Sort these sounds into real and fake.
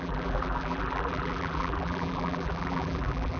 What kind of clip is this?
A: fake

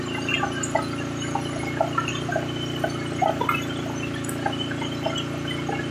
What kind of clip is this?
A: real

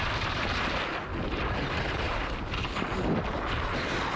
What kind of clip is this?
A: real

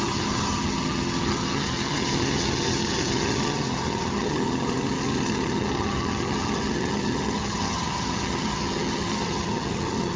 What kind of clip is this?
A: fake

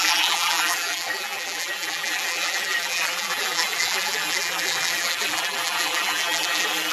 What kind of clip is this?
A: fake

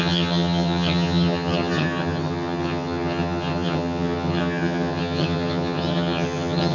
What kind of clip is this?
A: fake